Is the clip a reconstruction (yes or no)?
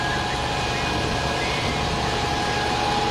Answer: no